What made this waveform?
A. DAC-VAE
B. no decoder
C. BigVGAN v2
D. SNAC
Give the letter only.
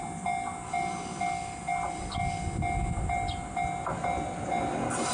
B